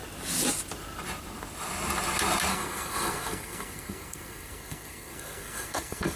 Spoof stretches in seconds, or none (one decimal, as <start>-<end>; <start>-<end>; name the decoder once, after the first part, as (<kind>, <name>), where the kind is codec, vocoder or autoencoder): 2.5-6.2 (codec, SNAC)